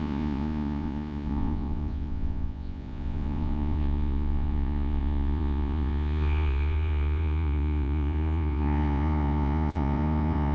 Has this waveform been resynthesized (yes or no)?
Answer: yes